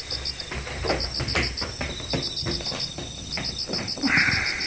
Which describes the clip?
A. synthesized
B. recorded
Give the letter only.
B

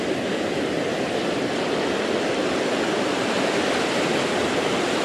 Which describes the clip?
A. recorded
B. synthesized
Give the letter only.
A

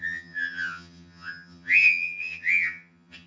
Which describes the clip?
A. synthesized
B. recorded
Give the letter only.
A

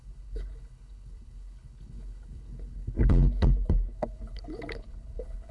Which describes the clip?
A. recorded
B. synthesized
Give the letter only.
B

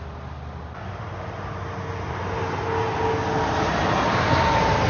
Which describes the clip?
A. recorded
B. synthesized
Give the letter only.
A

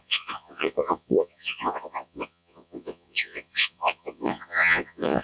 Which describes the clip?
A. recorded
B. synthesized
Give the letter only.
B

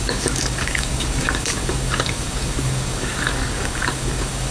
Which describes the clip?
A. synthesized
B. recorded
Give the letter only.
A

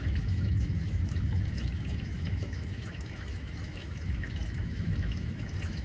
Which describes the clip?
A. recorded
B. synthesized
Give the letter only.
B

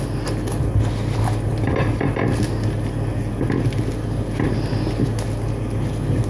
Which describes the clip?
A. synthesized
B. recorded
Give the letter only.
B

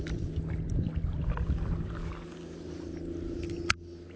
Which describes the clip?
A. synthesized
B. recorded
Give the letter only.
B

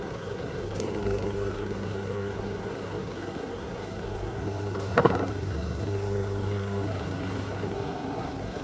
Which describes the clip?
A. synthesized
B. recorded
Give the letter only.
A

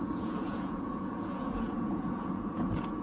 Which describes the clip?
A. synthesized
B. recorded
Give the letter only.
A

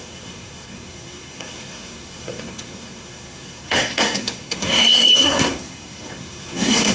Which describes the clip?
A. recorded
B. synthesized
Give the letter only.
B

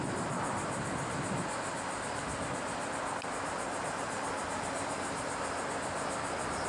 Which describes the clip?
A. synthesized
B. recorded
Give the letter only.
B